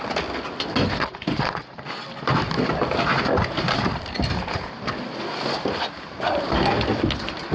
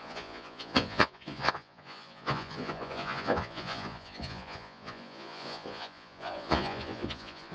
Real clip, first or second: first